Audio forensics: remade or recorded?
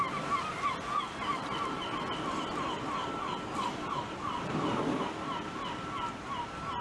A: recorded